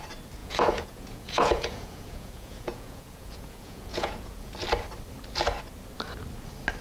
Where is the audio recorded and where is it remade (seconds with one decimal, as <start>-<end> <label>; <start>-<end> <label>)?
0.0-0.4 recorded; 0.4-4.5 remade; 4.5-6.8 recorded